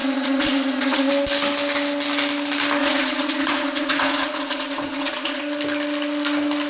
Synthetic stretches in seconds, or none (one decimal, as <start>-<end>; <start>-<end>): 0.0-1.1; 2.8-5.4